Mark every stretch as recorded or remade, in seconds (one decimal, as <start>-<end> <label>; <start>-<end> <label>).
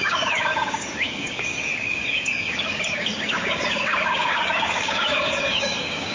0.0-6.1 remade